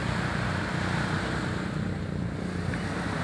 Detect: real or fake real